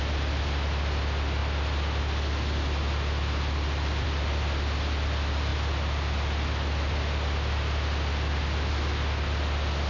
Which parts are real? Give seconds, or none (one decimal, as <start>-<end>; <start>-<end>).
0.0-9.9